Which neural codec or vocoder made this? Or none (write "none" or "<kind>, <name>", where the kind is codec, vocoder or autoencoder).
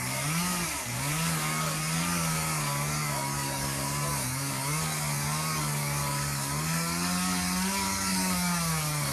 codec, DAC